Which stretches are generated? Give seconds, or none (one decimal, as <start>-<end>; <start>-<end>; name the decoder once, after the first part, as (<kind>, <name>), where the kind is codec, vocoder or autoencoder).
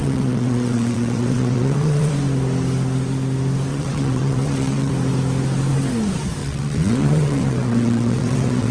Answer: 0.0-2.1 (vocoder, WaveNeXt); 3.7-4.9; 6.4-8.7